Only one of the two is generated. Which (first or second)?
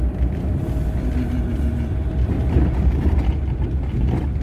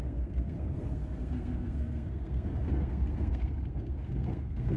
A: second